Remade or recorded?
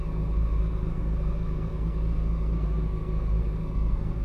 remade